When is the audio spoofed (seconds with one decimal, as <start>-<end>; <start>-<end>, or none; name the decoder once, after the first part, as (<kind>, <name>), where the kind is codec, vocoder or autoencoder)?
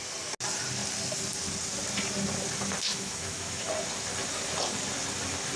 2.9-3.7 (autoencoder, DAC-VAE)